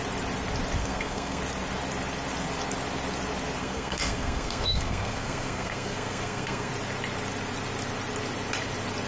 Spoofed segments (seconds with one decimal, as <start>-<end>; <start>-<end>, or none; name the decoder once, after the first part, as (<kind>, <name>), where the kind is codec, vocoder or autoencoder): 0.8-1.4 (codec, SNAC); 3.6-6.7